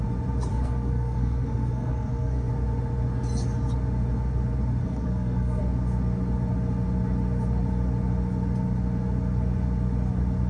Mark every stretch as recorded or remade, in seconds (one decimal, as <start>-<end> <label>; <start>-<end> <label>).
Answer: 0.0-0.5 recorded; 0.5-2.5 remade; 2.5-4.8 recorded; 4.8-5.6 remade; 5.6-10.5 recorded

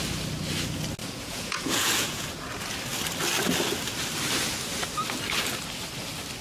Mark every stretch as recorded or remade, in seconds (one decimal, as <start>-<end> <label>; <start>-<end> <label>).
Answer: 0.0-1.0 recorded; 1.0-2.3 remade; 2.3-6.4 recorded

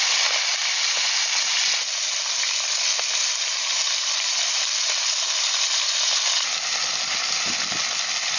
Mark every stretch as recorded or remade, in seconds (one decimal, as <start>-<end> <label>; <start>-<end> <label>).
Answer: 0.0-8.4 recorded